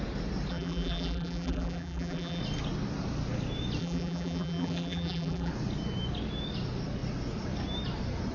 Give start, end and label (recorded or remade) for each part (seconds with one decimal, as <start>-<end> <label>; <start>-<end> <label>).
0.0-0.5 recorded; 0.5-2.4 remade; 2.4-3.8 recorded; 3.8-5.5 remade; 5.5-8.3 recorded

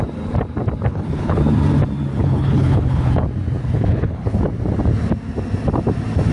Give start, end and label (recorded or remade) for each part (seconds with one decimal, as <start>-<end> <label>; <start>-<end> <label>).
0.0-0.9 recorded; 0.9-1.4 remade; 1.4-2.1 recorded; 2.1-3.1 remade; 3.1-3.6 recorded; 3.6-4.4 remade; 4.4-6.3 recorded

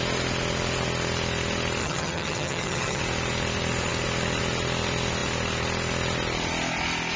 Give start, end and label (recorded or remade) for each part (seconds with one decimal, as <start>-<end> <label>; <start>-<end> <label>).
0.0-1.8 recorded; 1.8-3.0 remade; 3.0-7.2 recorded

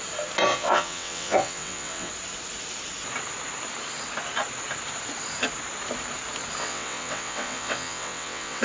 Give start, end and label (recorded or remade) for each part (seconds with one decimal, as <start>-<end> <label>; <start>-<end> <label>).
0.0-0.5 recorded; 0.5-2.1 remade; 2.1-6.6 recorded; 6.6-8.6 remade